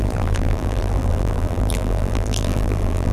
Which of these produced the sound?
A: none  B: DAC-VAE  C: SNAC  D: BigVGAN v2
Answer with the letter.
D